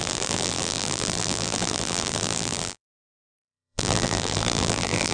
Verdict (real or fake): fake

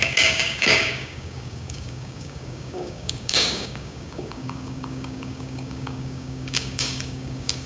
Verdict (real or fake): fake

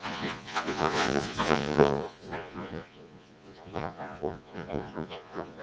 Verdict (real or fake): fake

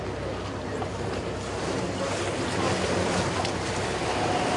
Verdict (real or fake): real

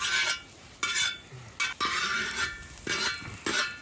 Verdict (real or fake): real